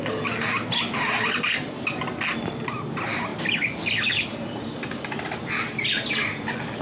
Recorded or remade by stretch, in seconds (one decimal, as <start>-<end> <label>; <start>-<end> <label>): 0.0-6.8 recorded